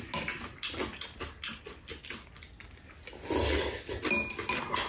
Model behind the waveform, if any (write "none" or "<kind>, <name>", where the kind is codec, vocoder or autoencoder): none